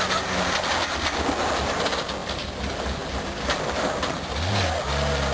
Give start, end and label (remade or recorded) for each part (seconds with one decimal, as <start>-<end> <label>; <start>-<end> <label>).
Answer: 0.0-2.2 recorded; 2.2-4.5 remade; 4.5-5.3 recorded